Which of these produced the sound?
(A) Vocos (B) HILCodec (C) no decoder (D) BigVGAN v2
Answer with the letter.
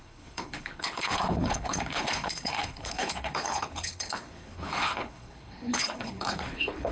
B